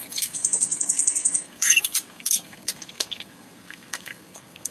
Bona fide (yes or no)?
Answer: no